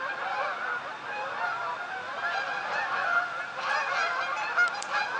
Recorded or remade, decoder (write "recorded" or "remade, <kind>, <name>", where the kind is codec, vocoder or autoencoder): recorded